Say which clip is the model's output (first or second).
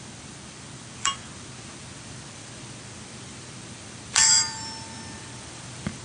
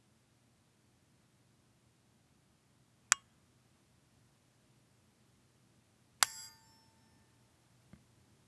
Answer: first